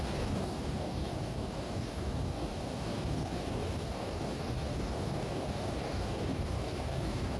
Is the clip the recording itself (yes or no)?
no